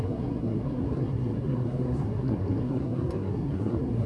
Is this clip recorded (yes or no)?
no